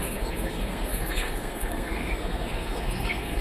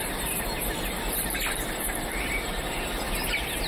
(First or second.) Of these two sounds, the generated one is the first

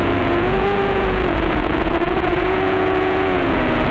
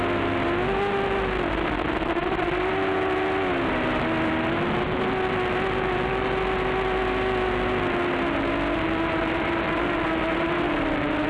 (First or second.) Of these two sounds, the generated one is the first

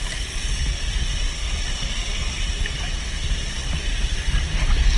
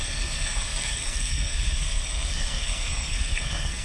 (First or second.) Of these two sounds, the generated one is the second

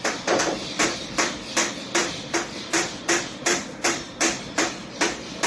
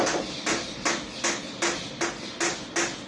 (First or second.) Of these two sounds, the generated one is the first